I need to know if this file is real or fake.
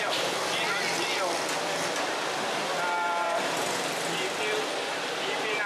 real